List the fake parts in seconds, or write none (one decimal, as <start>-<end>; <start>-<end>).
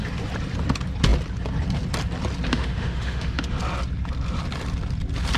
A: 2.5-3.6